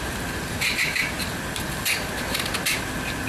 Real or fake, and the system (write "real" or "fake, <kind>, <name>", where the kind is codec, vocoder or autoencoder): real